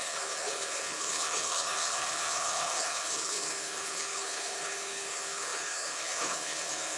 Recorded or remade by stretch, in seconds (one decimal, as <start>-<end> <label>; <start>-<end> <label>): 0.0-7.0 remade